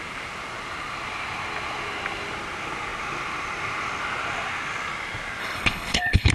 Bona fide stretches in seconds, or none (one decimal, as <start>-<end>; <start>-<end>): 0.0-5.4